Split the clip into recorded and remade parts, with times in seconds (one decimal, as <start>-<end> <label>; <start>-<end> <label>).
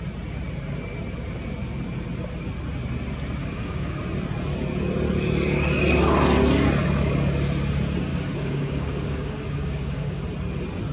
0.0-3.4 recorded; 3.4-4.0 remade; 4.0-8.1 recorded; 8.1-10.2 remade; 10.2-10.9 recorded